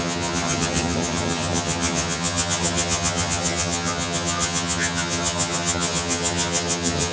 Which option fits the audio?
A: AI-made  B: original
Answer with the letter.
A